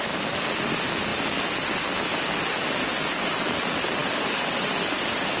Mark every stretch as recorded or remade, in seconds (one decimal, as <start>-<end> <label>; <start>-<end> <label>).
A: 0.0-5.4 recorded